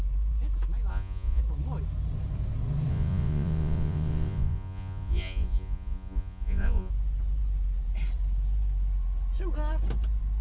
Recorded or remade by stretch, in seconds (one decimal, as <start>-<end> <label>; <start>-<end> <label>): 0.0-0.9 recorded; 0.9-1.4 remade; 1.4-2.9 recorded; 2.9-6.9 remade; 6.9-10.4 recorded